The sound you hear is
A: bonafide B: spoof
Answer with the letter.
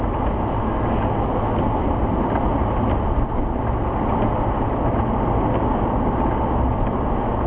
A